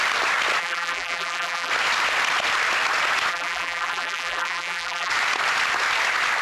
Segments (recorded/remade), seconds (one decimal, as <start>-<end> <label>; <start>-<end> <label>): 0.0-0.6 recorded; 0.6-1.7 remade; 1.7-3.3 recorded; 3.3-5.1 remade; 5.1-6.4 recorded